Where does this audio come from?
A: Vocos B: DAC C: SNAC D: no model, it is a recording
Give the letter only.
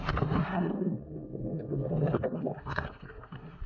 C